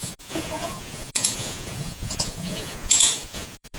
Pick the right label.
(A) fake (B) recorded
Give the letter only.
A